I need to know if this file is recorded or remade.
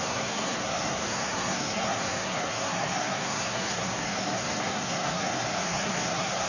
remade